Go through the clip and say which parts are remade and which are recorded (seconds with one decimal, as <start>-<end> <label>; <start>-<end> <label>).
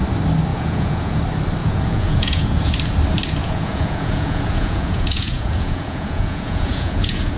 0.0-0.5 recorded; 0.5-1.2 remade; 1.2-1.6 recorded; 1.6-2.7 remade; 2.7-3.4 recorded; 3.4-7.4 remade